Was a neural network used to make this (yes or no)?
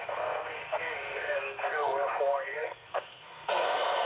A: yes